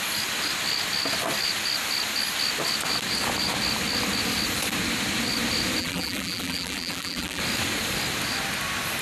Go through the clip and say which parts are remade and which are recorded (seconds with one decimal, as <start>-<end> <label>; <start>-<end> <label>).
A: 0.0-5.8 recorded; 5.8-7.4 remade; 7.4-9.0 recorded